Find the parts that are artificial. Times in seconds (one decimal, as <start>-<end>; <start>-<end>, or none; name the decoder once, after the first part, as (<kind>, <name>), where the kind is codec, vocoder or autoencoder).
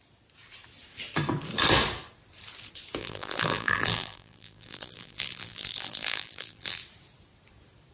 3.0-6.8 (vocoder, BigVGAN v2)